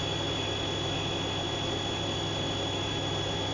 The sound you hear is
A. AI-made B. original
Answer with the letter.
B